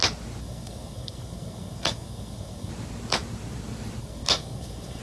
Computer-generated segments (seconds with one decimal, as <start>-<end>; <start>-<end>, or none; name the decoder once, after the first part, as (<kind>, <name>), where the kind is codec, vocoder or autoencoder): 0.4-2.7 (codec, SNAC); 4.0-5.0